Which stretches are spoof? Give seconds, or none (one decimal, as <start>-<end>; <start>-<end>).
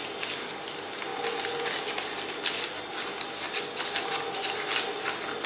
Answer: 1.1-1.8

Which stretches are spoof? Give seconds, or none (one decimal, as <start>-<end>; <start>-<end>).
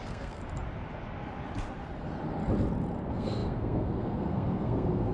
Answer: 0.0-0.4; 3.0-5.1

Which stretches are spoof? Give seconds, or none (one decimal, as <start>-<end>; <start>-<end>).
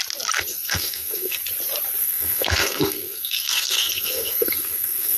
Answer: 0.5-1.4; 2.0-5.2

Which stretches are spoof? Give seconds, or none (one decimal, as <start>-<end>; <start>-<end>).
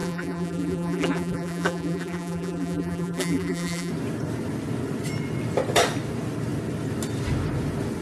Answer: 0.0-3.9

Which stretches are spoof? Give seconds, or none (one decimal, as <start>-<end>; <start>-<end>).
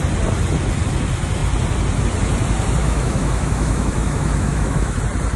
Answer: 2.8-5.0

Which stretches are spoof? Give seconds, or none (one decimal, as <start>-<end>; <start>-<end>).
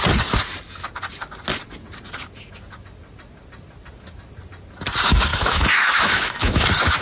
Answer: 5.3-6.6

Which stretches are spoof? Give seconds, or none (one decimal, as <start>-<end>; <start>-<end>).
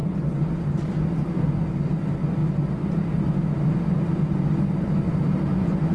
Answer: none